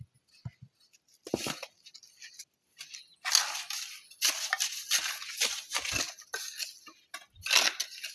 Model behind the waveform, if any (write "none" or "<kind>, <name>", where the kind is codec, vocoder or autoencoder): none